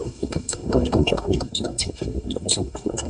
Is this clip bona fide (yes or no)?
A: no